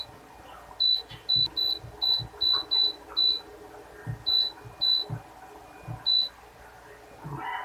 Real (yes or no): yes